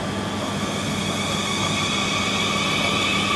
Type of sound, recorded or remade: recorded